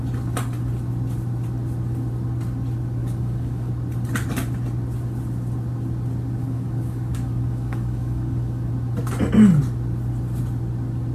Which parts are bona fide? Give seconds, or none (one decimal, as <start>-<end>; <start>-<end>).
0.0-3.0; 3.7-6.4; 8.7-11.1